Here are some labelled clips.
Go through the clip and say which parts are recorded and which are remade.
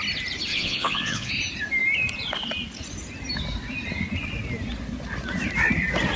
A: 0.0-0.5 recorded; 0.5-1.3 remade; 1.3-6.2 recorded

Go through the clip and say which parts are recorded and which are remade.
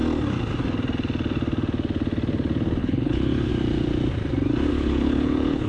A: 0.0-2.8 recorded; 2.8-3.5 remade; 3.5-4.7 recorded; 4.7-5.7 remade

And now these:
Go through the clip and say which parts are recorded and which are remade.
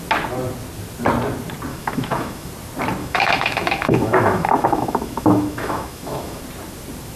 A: 0.0-1.7 recorded; 1.7-2.5 remade; 2.5-3.0 recorded; 3.0-6.4 remade; 6.4-7.2 recorded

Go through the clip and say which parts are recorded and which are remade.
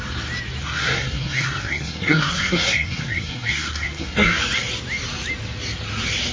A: 0.0-0.6 recorded; 0.6-4.4 remade; 4.4-6.3 recorded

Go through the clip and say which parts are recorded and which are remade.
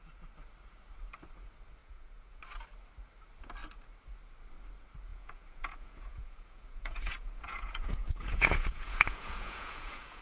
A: 0.0-1.8 recorded; 1.8-2.4 remade; 2.4-5.1 recorded; 5.1-10.2 remade